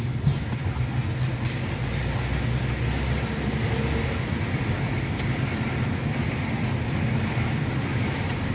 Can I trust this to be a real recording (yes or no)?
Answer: yes